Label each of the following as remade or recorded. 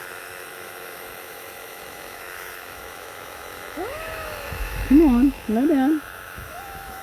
remade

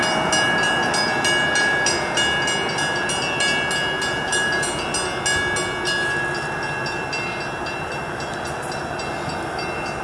recorded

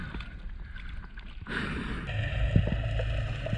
recorded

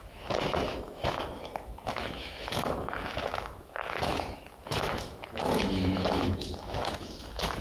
remade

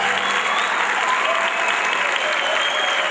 recorded